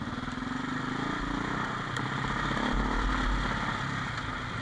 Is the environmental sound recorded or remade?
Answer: recorded